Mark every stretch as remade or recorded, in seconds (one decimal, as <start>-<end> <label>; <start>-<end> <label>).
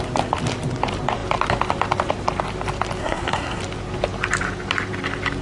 0.0-3.0 recorded; 3.0-3.6 remade; 3.6-5.4 recorded